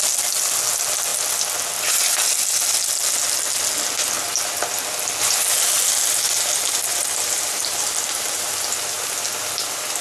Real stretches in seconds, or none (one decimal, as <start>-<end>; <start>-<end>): 0.0-6.9; 8.5-10.0